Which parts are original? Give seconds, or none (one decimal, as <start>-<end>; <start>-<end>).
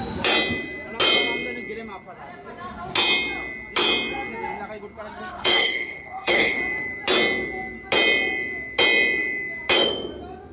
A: 0.0-5.3; 6.6-10.5